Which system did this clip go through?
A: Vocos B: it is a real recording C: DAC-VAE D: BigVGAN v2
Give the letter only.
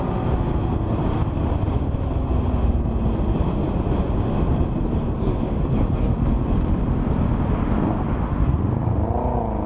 B